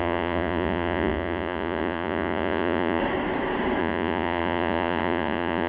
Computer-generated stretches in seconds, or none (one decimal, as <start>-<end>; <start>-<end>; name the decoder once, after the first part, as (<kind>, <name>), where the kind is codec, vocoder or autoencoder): 0.0-3.0 (vocoder, Vocos); 3.8-5.7